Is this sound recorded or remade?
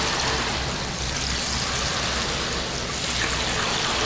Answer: recorded